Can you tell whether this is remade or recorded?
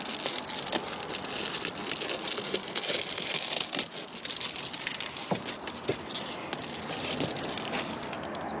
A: recorded